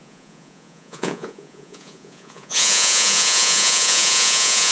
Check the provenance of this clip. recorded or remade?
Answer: remade